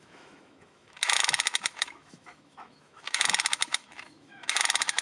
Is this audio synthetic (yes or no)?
yes